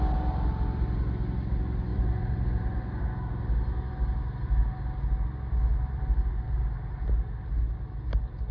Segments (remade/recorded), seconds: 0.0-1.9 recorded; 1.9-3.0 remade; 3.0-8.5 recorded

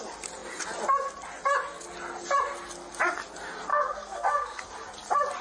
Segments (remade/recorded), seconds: 0.0-3.7 recorded; 3.7-4.6 remade; 4.6-5.4 recorded

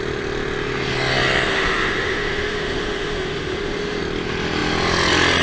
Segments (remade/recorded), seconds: 0.0-1.5 recorded; 1.5-4.0 remade; 4.0-5.4 recorded

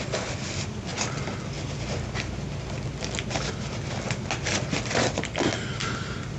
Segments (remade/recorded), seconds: 0.0-6.4 recorded

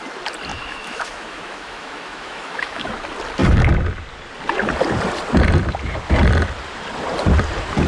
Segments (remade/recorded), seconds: 0.0-0.5 recorded; 0.5-2.9 remade; 2.9-7.9 recorded

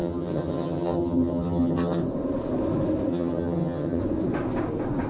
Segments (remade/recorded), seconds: 0.0-2.0 remade; 2.0-3.1 recorded; 3.1-4.0 remade; 4.0-5.1 recorded